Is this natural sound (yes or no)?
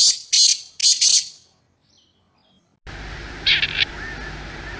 yes